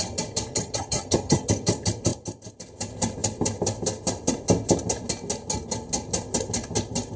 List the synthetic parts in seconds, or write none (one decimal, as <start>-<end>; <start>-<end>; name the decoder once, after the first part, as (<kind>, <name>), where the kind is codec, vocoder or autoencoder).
0.5-1.5 (vocoder, HiFi-GAN)